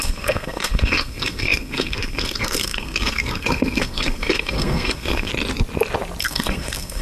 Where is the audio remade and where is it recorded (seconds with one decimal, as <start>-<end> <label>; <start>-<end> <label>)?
0.0-5.3 remade; 5.3-6.2 recorded; 6.2-7.0 remade

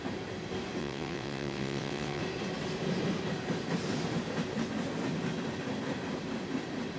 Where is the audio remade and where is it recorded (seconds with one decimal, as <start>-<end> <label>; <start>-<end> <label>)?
0.0-0.8 recorded; 0.8-2.2 remade; 2.2-7.0 recorded

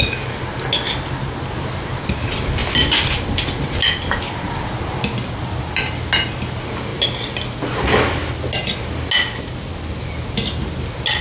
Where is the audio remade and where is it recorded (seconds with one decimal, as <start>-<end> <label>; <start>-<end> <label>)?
0.0-11.2 recorded

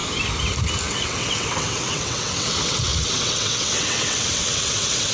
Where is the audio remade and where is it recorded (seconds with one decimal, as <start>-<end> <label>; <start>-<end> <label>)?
0.0-0.9 recorded; 0.9-5.1 remade

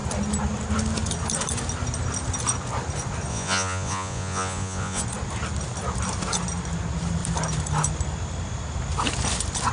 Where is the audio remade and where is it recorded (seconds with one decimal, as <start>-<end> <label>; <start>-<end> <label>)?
0.0-3.3 recorded; 3.3-5.0 remade; 5.0-9.7 recorded